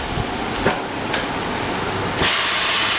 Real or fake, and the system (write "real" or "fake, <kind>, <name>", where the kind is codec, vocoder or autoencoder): real